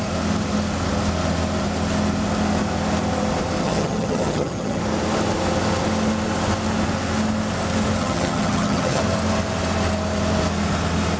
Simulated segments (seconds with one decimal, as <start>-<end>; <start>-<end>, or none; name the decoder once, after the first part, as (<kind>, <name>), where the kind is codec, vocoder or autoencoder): 3.6-4.8 (vocoder, HiFi-GAN); 8.0-9.0